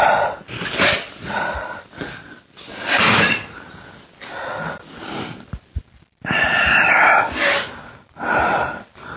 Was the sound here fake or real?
fake